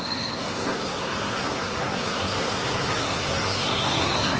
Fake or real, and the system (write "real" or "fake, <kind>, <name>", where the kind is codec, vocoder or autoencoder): fake, codec, SNAC